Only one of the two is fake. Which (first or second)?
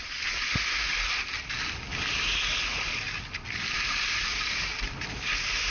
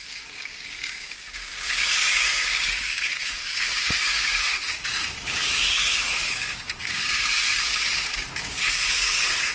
second